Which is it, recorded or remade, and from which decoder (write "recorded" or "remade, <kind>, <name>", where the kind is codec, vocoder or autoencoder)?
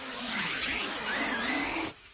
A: remade, autoencoder, DAC-VAE